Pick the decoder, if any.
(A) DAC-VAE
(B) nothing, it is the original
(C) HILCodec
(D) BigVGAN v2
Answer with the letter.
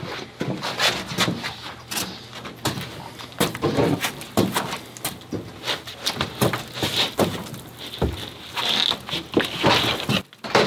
B